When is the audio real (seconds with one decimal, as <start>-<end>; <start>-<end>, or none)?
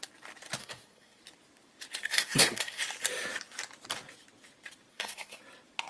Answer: 0.0-0.6; 1.2-2.0; 2.8-4.9; 5.4-5.9